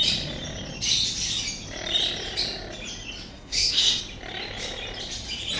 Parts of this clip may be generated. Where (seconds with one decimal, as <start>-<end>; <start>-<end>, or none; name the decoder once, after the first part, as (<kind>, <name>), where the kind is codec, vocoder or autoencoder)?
3.3-4.0 (codec, SNAC)